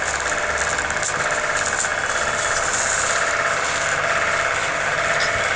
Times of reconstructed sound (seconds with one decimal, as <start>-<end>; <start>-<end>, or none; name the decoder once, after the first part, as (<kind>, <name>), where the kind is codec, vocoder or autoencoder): none